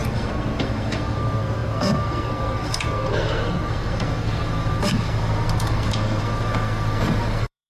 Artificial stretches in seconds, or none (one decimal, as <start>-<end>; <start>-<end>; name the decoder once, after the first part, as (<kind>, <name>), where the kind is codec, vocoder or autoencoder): 0.0-7.7 (codec, SNAC)